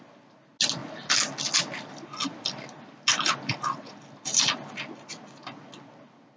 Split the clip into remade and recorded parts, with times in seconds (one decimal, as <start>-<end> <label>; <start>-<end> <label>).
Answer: 0.0-6.4 recorded